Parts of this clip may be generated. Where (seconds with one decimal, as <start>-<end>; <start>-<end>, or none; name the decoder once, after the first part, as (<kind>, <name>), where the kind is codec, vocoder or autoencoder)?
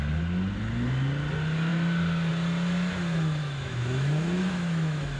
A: 3.4-5.2 (autoencoder, DAC-VAE)